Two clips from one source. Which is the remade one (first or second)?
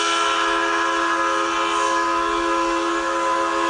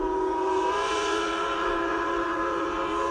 second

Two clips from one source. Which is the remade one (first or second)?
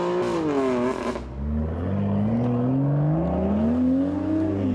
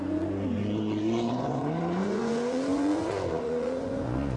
second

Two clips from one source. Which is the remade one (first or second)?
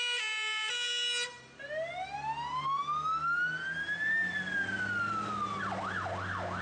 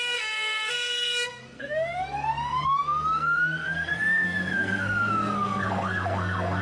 second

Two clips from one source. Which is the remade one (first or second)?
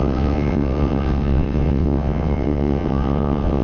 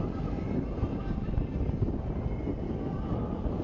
first